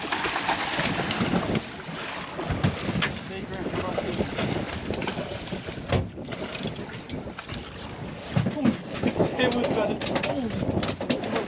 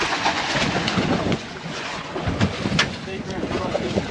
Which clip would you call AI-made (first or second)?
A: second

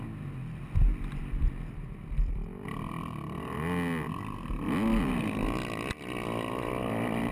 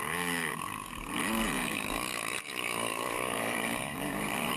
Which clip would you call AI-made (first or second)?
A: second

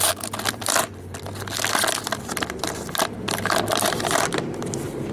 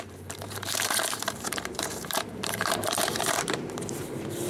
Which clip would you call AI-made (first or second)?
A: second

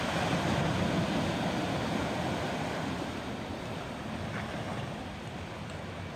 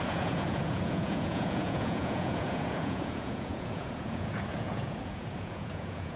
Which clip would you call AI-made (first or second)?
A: second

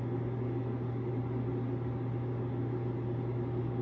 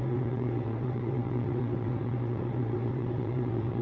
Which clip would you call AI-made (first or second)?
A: second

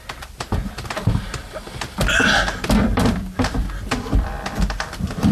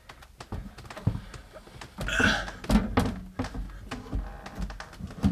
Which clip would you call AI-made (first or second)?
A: first